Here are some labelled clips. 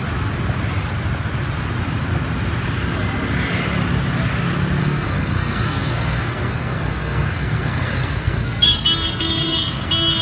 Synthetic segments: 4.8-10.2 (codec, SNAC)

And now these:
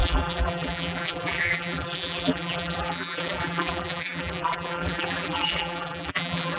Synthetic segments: 0.0-6.6 (vocoder, BigVGAN v2)

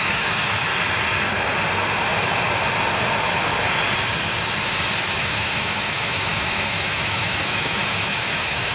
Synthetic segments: 0.0-0.7 (autoencoder, DAC-VAE); 5.0-8.7

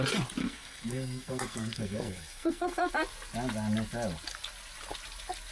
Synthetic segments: 0.4-2.9 (codec, SNAC)